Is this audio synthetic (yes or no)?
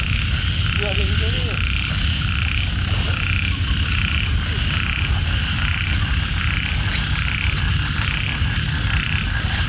no